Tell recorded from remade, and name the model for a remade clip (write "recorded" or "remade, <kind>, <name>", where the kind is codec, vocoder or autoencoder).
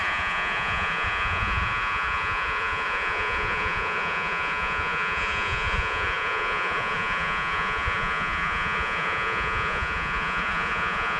remade, vocoder, Vocos